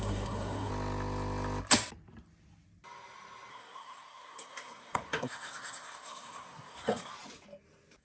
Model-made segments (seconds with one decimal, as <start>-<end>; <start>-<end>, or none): 0.0-0.7; 3.5-7.1